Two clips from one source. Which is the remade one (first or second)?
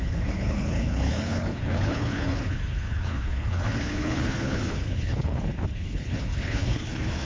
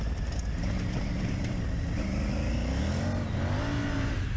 first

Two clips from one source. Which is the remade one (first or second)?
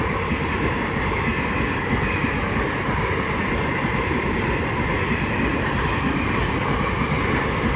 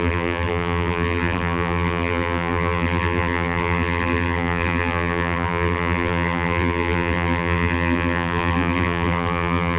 second